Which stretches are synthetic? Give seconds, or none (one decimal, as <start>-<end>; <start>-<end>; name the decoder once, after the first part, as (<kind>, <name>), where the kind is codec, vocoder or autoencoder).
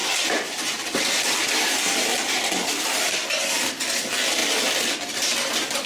none